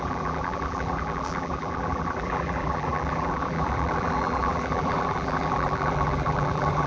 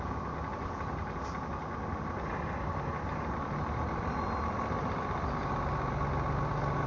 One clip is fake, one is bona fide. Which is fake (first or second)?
first